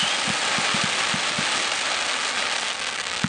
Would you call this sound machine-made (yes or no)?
no